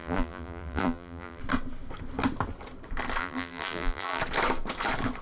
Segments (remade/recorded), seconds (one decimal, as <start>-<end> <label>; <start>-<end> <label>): 0.0-1.4 remade; 1.4-3.2 recorded; 3.2-4.2 remade; 4.2-5.2 recorded

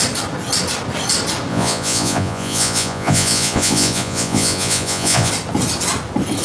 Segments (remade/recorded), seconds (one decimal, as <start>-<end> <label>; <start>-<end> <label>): 0.0-1.5 recorded; 1.5-5.3 remade; 5.3-6.4 recorded